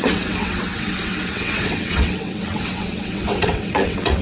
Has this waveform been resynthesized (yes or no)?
yes